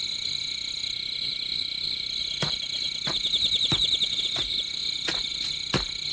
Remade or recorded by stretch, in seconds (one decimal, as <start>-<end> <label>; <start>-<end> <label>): 0.0-1.3 recorded; 1.3-2.2 remade; 2.2-6.1 recorded